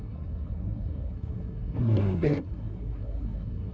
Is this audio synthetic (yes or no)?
yes